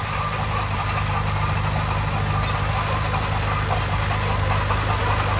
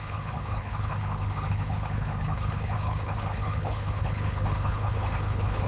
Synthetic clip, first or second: second